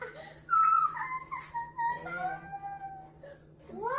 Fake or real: real